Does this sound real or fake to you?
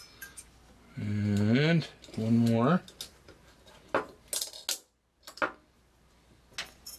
real